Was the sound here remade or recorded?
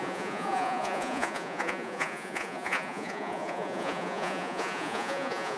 remade